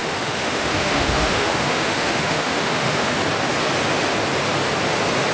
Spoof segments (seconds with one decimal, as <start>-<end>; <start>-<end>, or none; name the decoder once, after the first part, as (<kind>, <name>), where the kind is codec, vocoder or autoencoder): 0.0-3.2 (autoencoder, DAC-VAE)